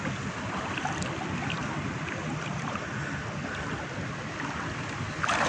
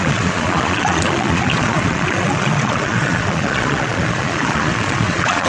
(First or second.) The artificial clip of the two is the second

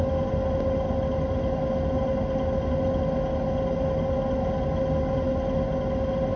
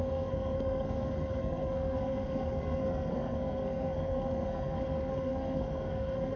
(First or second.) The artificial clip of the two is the second